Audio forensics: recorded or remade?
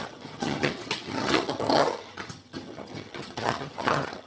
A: remade